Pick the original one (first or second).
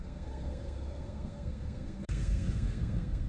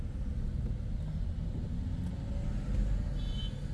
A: second